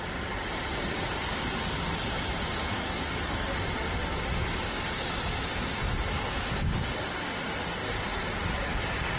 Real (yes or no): yes